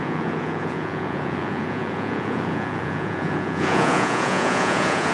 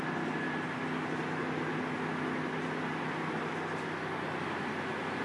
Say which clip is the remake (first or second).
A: first